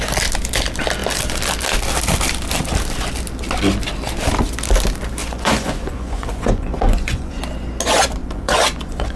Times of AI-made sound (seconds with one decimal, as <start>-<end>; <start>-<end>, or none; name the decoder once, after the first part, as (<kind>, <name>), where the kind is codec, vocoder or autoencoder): 5.2-7.4 (vocoder, Vocos); 8.2-9.2